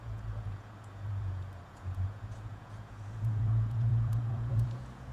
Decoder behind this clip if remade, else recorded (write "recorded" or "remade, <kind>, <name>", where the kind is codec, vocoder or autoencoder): remade, vocoder, Vocos